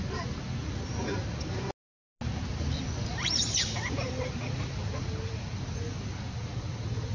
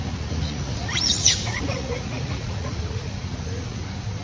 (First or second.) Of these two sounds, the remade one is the second